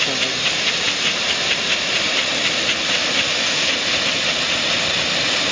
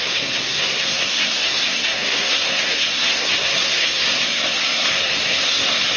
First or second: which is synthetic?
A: second